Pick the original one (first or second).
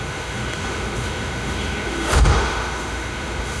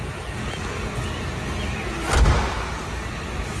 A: second